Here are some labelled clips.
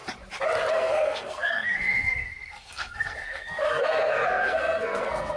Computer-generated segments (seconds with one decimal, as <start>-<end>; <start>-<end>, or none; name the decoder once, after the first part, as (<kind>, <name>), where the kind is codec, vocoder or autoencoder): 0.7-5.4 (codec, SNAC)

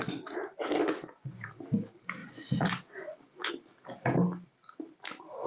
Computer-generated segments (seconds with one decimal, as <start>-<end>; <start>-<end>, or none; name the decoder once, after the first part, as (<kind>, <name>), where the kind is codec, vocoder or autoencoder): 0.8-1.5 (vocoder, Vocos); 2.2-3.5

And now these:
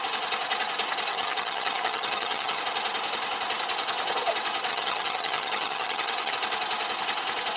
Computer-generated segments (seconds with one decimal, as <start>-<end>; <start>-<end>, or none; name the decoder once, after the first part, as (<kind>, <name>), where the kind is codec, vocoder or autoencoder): 1.1-2.6 (vocoder, HiFi-GAN); 4.7-6.3

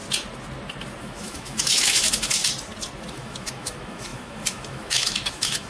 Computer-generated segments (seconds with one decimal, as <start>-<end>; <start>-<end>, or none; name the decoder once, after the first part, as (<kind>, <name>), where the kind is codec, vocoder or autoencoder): 1.0-2.4 (autoencoder, DAC-VAE); 3.1-5.7

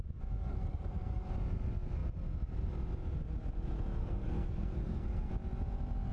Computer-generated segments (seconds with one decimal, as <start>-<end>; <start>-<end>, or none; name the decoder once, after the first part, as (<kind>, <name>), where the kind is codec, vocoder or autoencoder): 0.5-1.3 (codec, SNAC); 4.0-5.3

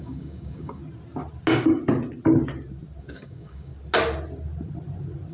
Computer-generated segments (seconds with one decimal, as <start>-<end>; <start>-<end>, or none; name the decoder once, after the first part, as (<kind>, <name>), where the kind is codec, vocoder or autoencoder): 0.0-0.8 (codec, DAC); 3.0-3.7

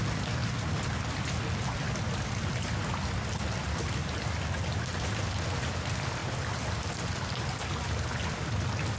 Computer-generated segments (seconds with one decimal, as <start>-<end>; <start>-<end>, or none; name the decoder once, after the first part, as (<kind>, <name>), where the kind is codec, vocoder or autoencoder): 0.4-5.4 (vocoder, BigVGAN v2); 6.2-6.9